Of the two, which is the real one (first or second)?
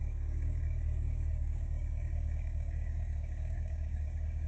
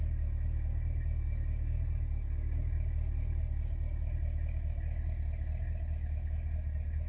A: second